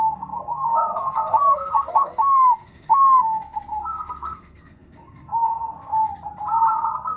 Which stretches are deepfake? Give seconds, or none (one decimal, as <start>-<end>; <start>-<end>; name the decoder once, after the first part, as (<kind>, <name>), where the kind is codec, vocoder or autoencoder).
0.0-5.9 (codec, SNAC); 6.7-7.2